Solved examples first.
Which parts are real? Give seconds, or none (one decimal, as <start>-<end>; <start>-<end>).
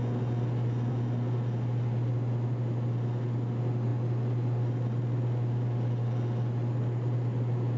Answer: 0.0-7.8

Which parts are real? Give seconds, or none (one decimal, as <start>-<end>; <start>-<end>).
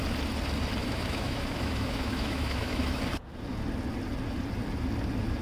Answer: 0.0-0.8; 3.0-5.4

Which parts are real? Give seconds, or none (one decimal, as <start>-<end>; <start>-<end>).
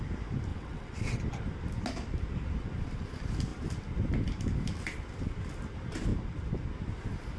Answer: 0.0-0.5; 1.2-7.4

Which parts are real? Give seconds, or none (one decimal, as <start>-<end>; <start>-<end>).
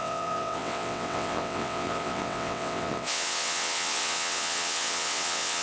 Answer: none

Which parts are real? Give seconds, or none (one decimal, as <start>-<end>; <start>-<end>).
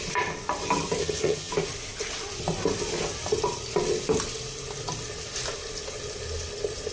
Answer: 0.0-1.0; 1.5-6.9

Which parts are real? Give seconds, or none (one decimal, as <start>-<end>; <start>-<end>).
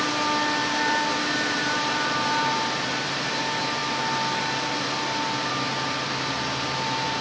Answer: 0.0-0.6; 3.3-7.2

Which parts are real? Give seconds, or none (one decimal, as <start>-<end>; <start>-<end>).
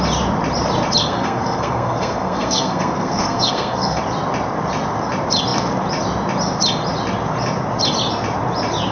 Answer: 0.0-1.0; 4.0-8.9